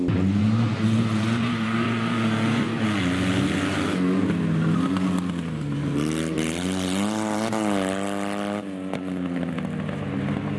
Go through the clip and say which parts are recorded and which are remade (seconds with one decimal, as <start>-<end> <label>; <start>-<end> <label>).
0.0-0.4 recorded; 0.4-3.0 remade; 3.0-10.6 recorded